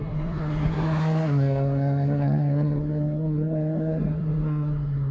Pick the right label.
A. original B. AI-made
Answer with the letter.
B